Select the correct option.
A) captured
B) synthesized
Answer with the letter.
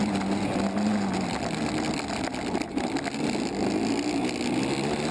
A